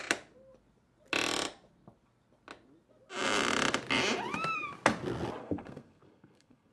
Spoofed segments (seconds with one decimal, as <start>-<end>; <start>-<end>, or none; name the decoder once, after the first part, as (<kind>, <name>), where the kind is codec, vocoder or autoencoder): 5.4-6.7 (codec, SNAC)